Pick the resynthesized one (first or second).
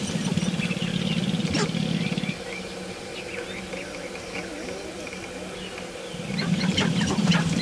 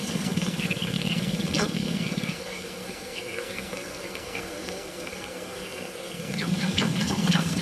second